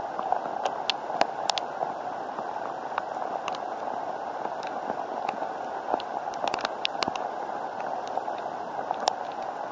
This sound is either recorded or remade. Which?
recorded